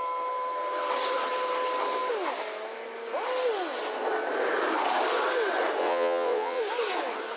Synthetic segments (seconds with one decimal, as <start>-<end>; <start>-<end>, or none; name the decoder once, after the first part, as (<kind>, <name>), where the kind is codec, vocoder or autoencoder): 5.8-6.6 (vocoder, WaveNeXt)